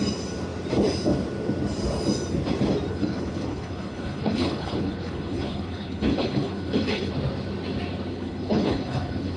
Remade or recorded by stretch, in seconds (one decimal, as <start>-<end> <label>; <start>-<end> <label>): 0.0-2.9 recorded; 2.9-7.1 remade; 7.1-8.1 recorded; 8.1-9.4 remade